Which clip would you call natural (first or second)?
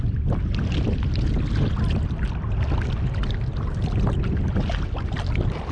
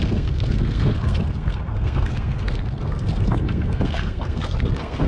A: first